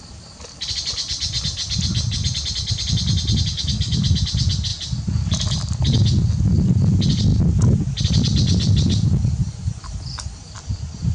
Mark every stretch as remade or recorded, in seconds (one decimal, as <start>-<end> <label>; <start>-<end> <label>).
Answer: 0.0-3.5 recorded; 3.5-4.0 remade; 4.0-11.1 recorded